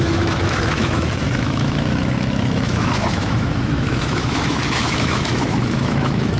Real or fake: fake